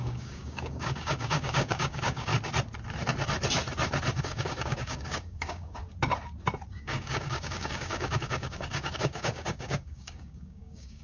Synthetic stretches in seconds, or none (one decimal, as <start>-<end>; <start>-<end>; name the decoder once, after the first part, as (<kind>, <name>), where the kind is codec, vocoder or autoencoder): 0.0-2.3 (codec, DAC); 4.2-5.8; 6.7-11.0